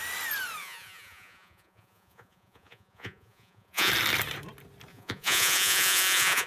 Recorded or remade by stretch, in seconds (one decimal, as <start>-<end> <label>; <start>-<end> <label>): 0.0-0.6 recorded; 0.6-3.9 remade; 3.9-4.9 recorded; 4.9-6.5 remade